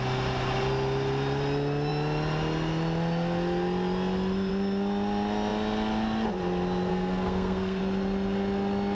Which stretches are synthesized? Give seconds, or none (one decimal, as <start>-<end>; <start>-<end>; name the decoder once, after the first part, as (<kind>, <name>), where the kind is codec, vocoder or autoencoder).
6.9-7.8 (codec, SNAC)